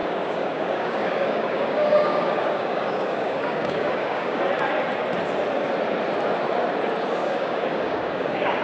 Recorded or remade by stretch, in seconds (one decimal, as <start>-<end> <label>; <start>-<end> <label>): 0.0-4.4 remade; 4.4-7.2 recorded; 7.2-8.6 remade